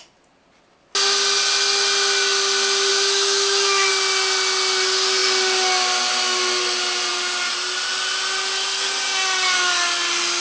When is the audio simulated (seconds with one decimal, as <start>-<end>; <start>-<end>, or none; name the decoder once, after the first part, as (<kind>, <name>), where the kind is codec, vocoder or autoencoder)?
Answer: 2.9-3.9 (autoencoder, DAC-VAE)